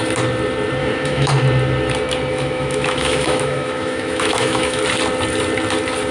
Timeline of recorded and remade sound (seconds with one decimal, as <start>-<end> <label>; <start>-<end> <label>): 0.0-0.8 recorded; 0.8-1.3 remade; 1.3-2.3 recorded; 2.3-4.8 remade; 4.8-6.1 recorded